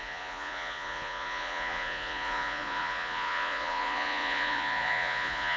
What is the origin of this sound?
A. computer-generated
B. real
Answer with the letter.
A